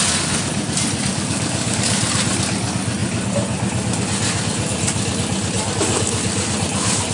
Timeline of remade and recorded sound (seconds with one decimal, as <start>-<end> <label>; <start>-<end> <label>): 0.0-1.1 recorded; 1.1-2.0 remade; 2.0-7.1 recorded